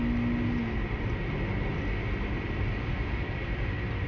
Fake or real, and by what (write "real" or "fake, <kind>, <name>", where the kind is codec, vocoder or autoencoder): real